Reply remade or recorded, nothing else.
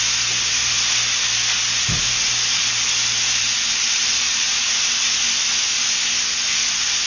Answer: recorded